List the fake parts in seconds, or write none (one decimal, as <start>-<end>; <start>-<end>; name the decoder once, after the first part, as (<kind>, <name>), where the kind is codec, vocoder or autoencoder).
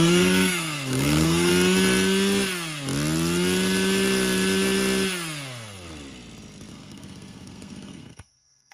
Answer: 0.0-1.5 (codec, SNAC); 6.7-8.7